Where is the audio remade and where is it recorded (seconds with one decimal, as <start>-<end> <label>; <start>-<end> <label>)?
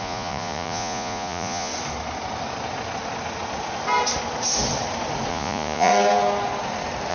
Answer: 0.0-1.7 remade; 1.7-5.3 recorded; 5.3-5.9 remade; 5.9-7.1 recorded